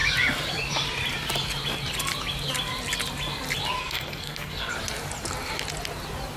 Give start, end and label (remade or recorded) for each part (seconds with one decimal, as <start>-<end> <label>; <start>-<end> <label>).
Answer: 0.0-3.8 recorded; 3.8-4.7 remade; 4.7-6.4 recorded